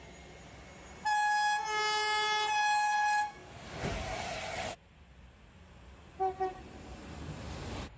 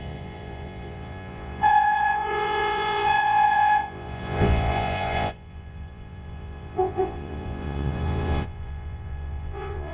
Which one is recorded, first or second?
first